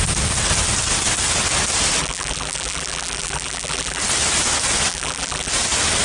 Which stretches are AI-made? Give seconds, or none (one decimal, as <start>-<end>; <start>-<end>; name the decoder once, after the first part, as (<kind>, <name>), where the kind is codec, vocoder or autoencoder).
2.0-4.0 (vocoder, BigVGAN v2); 4.9-5.5